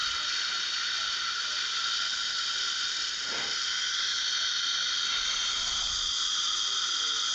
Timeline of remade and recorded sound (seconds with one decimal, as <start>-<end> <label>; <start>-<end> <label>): 0.0-7.3 recorded